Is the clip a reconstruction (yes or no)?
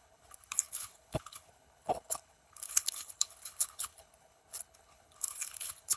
yes